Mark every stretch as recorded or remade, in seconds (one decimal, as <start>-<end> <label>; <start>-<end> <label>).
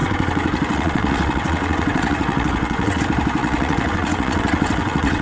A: 0.0-3.0 remade; 3.0-3.4 recorded; 3.4-5.2 remade